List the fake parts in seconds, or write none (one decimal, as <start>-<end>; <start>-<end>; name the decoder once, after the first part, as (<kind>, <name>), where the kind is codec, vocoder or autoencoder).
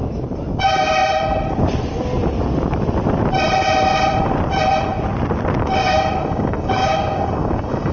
0.6-1.0 (codec, DAC); 5.6-7.9